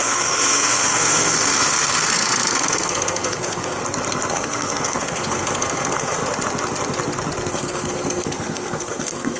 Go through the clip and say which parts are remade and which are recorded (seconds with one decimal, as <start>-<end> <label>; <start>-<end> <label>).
0.0-3.8 remade; 3.8-4.3 recorded; 4.3-6.2 remade; 6.2-7.5 recorded; 7.5-9.4 remade